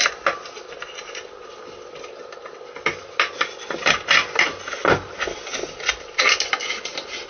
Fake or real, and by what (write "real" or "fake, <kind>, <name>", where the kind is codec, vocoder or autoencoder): real